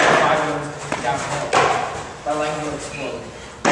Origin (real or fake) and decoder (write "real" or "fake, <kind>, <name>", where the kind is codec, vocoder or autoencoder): real